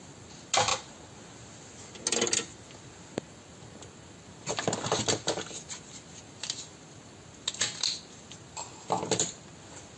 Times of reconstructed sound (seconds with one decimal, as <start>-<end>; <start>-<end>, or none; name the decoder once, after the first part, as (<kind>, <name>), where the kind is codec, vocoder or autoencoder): none